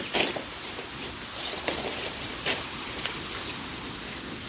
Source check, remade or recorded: remade